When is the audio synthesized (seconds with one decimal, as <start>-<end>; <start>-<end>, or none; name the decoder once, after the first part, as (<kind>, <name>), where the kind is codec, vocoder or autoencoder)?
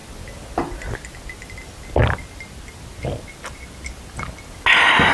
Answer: none